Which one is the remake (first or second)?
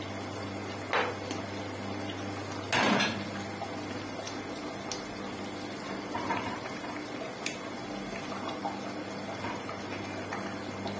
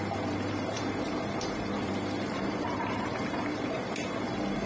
second